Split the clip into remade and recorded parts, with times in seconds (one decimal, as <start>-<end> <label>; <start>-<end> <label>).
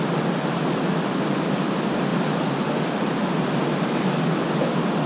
0.0-5.1 recorded